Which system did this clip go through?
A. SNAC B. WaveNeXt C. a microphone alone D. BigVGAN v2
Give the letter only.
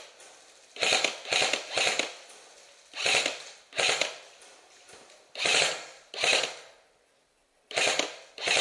C